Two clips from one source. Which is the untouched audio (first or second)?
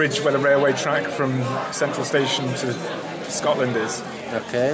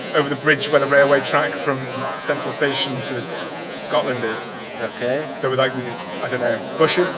first